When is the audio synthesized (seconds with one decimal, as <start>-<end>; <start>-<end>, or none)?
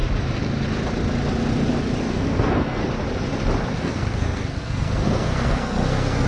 2.0-2.8; 3.8-6.3